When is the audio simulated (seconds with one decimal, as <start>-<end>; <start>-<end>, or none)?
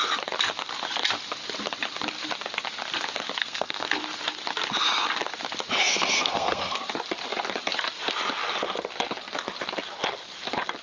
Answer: 3.4-4.0; 5.9-6.6